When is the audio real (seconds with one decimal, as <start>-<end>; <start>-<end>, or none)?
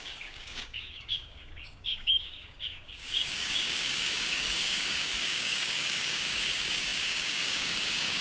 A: none